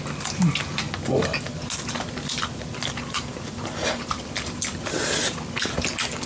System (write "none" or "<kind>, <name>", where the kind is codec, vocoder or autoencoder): none